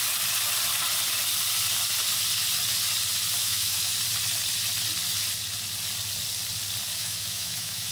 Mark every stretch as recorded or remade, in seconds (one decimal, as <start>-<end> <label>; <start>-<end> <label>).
0.0-3.4 recorded; 3.4-3.9 remade; 3.9-6.9 recorded; 6.9-7.9 remade